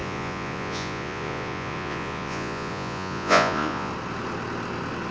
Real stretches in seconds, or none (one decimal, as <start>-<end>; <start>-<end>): 3.9-5.1

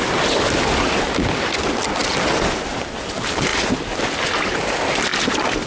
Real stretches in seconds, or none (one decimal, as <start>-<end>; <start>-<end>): 0.0-5.7